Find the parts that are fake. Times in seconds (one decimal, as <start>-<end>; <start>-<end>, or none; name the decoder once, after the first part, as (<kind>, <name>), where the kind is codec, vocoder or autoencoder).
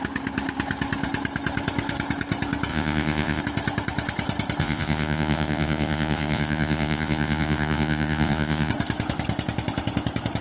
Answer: 2.7-3.4 (vocoder, Vocos); 4.6-8.7